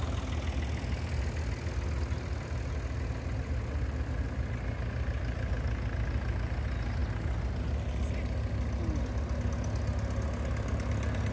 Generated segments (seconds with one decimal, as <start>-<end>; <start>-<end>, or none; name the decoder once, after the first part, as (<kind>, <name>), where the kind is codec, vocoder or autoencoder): none